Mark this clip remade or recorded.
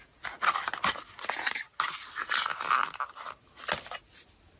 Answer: recorded